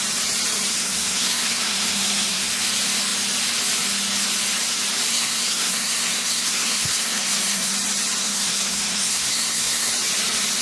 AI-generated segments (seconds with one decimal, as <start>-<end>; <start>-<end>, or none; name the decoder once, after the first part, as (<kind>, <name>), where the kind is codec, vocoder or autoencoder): 0.7-2.5 (codec, SNAC); 5.1-7.7; 8.2-9.9